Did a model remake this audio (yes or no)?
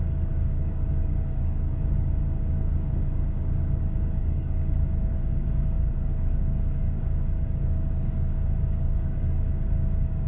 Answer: yes